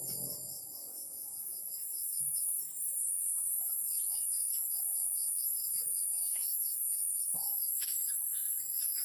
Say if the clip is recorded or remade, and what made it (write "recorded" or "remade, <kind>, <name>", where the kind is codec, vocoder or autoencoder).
remade, autoencoder, DAC-VAE